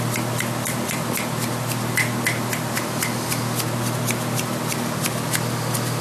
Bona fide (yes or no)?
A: yes